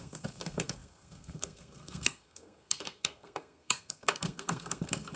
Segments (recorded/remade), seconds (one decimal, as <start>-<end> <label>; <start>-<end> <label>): 0.0-5.2 remade